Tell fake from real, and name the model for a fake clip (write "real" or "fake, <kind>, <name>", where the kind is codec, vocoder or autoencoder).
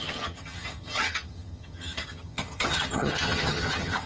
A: fake, vocoder, HiFi-GAN